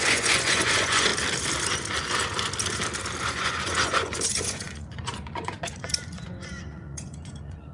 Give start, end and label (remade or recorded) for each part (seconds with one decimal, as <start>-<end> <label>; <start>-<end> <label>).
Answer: 0.0-1.1 remade; 1.1-3.2 recorded; 3.2-7.7 remade